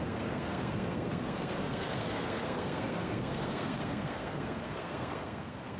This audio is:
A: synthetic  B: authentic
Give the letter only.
A